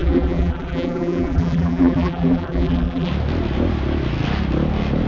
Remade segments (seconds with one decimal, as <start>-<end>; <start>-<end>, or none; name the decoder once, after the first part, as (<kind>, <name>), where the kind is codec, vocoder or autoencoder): 0.0-3.1 (vocoder, BigVGAN v2)